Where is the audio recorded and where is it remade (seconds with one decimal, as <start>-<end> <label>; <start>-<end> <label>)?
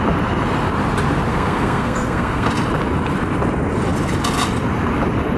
0.0-1.3 recorded; 1.3-2.5 remade; 2.5-5.4 recorded